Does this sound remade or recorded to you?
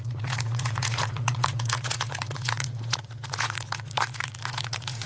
remade